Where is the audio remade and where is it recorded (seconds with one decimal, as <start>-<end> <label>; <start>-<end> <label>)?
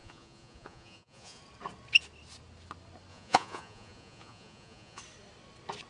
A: 0.0-1.4 remade; 1.4-3.1 recorded; 3.1-5.0 remade; 5.0-5.9 recorded